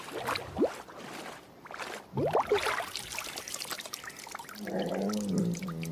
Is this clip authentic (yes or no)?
yes